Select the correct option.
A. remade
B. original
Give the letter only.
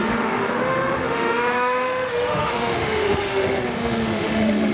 A